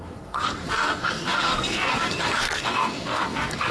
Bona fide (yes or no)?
no